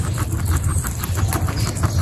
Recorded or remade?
recorded